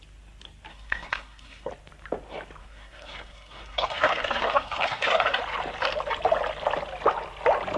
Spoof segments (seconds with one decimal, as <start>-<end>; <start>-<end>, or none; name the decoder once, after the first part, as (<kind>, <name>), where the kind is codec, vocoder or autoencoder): 0.7-1.7 (codec, SNAC); 2.6-5.4